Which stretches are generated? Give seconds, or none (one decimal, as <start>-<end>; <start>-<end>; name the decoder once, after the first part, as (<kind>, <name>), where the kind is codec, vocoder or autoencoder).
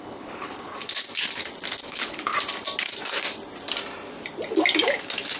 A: 0.0-0.7 (codec, HILCodec); 1.8-2.3